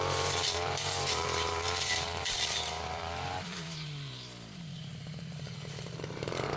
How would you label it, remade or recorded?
remade